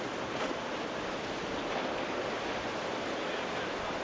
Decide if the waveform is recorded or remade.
recorded